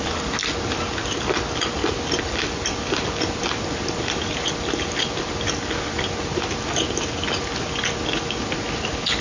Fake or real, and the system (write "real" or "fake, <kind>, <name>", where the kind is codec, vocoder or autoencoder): real